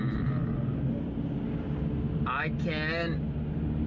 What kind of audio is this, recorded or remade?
recorded